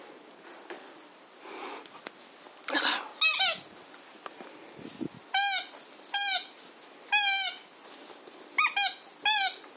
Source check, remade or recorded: recorded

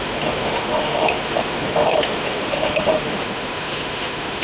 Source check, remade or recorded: remade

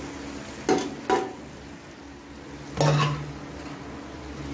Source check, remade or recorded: recorded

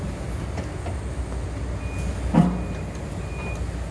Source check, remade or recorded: recorded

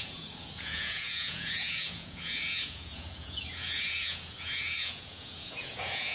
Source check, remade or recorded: remade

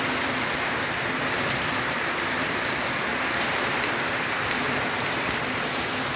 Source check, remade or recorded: remade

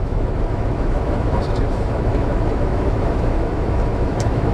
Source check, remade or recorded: remade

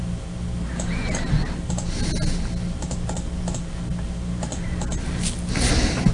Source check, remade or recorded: recorded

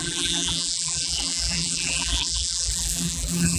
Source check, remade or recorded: remade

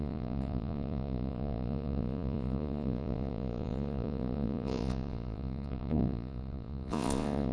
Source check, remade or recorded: remade